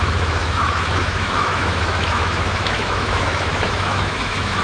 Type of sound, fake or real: fake